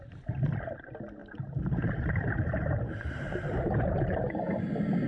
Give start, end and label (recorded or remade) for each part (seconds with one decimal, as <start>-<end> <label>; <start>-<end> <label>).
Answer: 0.0-1.2 recorded; 1.2-4.3 remade; 4.3-5.1 recorded